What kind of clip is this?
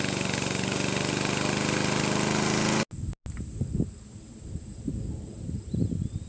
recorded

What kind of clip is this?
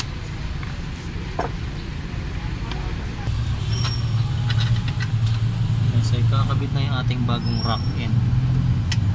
recorded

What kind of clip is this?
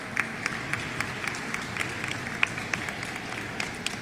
recorded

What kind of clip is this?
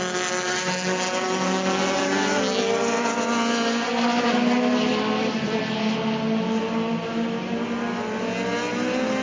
recorded